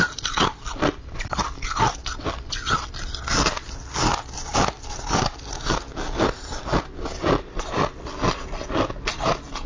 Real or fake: real